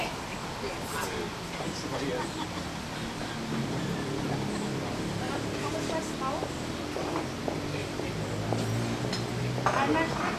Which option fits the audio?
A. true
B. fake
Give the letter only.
A